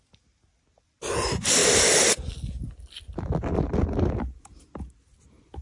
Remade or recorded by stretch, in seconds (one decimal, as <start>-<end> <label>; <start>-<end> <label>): 0.0-5.6 recorded